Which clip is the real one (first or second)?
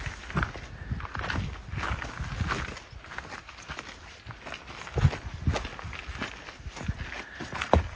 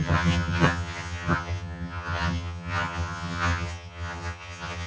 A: first